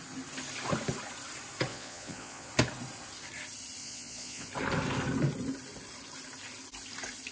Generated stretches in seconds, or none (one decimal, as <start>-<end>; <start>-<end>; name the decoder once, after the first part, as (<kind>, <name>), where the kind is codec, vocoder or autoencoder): 1.7-2.5 (vocoder, Vocos); 3.8-4.5